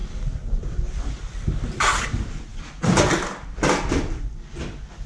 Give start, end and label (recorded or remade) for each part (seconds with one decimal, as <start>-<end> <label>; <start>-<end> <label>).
0.0-5.1 recorded